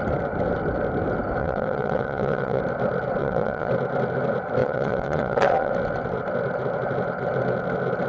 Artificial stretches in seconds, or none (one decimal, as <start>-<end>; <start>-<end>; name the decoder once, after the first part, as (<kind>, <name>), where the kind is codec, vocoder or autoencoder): 1.4-2.6 (vocoder, WaveNeXt); 3.2-3.7; 4.6-5.7